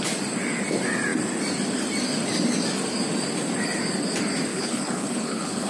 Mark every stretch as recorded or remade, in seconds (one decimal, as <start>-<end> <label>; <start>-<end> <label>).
0.0-4.5 recorded; 4.5-5.7 remade